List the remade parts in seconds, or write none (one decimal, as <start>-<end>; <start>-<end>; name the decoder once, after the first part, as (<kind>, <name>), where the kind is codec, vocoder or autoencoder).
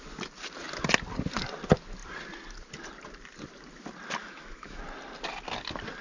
4.2-4.8 (autoencoder, DAC-VAE)